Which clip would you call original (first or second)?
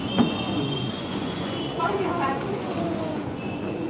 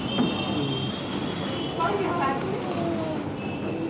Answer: second